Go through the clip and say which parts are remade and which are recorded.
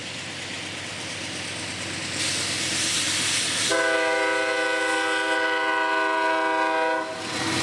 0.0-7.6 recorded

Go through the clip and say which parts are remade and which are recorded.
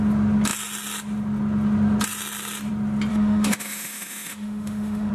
0.0-3.1 recorded; 3.1-5.1 remade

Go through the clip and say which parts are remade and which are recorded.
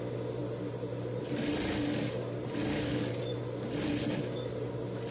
0.0-5.1 recorded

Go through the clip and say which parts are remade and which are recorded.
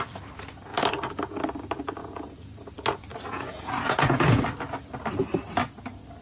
0.0-2.0 recorded; 2.0-2.7 remade; 2.7-3.1 recorded; 3.1-4.4 remade; 4.4-6.2 recorded